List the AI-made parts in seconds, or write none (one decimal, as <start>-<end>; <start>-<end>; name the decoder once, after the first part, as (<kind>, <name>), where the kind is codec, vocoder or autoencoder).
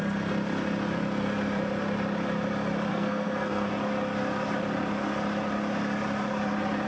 2.9-3.7 (codec, SNAC)